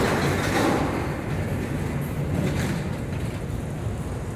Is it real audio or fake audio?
real